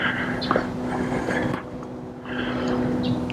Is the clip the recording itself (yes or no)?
yes